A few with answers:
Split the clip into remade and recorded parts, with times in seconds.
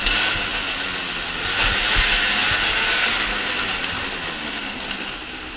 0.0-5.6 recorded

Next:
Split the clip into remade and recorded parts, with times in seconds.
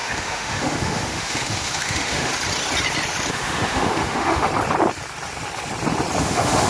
0.0-2.3 remade; 2.3-3.3 recorded; 3.3-4.5 remade; 4.5-6.2 recorded; 6.2-6.7 remade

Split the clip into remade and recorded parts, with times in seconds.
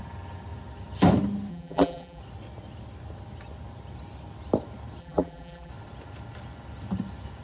0.0-1.5 recorded; 1.5-2.2 remade; 2.2-5.0 recorded; 5.0-5.7 remade; 5.7-7.4 recorded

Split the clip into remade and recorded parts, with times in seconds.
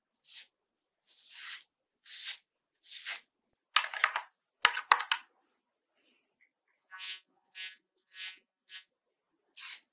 0.0-6.8 recorded; 6.8-8.9 remade; 8.9-9.9 recorded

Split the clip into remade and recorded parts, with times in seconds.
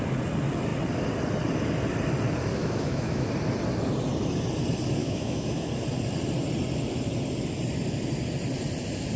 0.0-2.5 recorded; 2.5-3.3 remade; 3.3-5.0 recorded; 5.0-5.7 remade; 5.7-9.2 recorded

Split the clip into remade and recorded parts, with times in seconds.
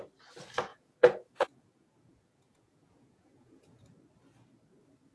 0.0-0.7 recorded; 0.7-3.8 remade; 3.8-5.1 recorded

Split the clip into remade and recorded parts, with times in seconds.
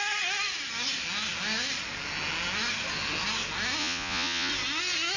0.0-3.8 recorded; 3.8-4.5 remade; 4.5-5.2 recorded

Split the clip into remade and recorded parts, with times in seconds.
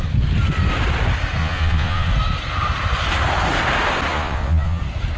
0.0-1.4 recorded; 1.4-2.1 remade; 2.1-4.1 recorded; 4.1-4.8 remade; 4.8-5.2 recorded